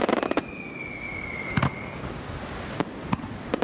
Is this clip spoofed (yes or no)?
no